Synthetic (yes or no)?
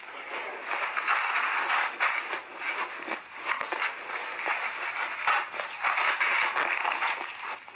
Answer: no